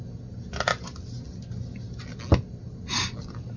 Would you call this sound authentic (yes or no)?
yes